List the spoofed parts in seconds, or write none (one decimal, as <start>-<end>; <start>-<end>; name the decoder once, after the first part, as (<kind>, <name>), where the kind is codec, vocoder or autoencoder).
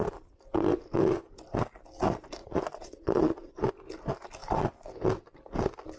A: 2.4-3.7 (vocoder, Vocos)